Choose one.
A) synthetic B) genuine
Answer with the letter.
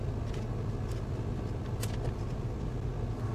B